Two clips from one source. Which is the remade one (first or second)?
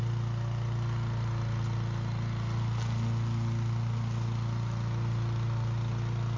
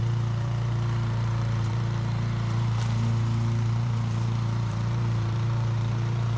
second